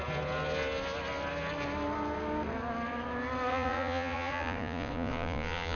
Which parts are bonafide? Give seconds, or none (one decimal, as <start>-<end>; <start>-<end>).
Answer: 0.0-3.5